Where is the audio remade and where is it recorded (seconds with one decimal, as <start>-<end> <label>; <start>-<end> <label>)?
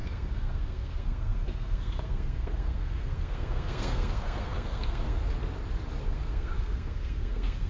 0.0-5.2 remade; 5.2-6.0 recorded; 6.0-7.7 remade